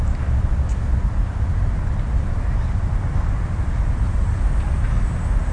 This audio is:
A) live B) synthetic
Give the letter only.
A